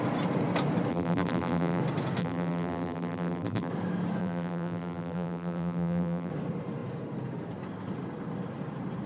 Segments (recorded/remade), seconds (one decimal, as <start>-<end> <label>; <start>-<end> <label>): 0.0-0.9 recorded; 0.9-1.8 remade; 1.8-2.2 recorded; 2.2-3.7 remade; 3.7-4.2 recorded; 4.2-6.3 remade; 6.3-9.1 recorded